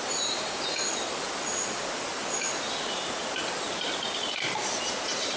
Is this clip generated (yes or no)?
no